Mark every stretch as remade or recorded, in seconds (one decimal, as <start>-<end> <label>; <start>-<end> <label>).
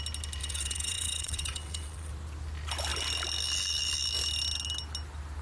0.0-0.4 recorded; 0.4-2.1 remade; 2.1-5.4 recorded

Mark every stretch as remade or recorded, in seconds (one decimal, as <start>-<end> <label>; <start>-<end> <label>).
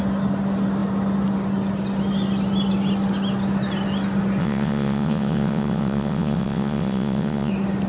0.0-4.4 recorded; 4.4-7.5 remade; 7.5-7.9 recorded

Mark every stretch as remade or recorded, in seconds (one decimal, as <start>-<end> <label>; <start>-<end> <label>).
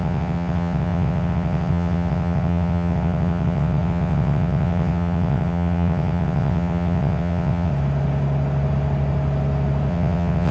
0.0-7.7 remade; 7.7-9.9 recorded; 9.9-10.5 remade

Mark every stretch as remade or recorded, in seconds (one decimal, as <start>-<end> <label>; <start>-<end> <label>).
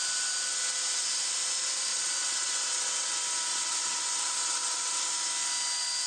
0.0-1.9 recorded; 1.9-3.1 remade; 3.1-3.5 recorded; 3.5-5.1 remade; 5.1-6.1 recorded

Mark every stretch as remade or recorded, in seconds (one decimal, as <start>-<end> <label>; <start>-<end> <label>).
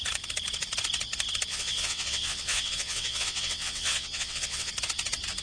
0.0-1.5 recorded; 1.5-4.7 remade; 4.7-5.4 recorded